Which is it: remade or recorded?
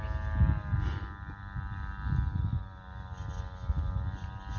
recorded